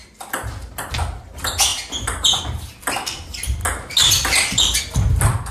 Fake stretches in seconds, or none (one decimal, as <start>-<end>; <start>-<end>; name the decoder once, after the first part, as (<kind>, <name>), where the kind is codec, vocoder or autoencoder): none